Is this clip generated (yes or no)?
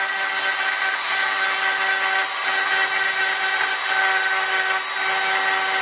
no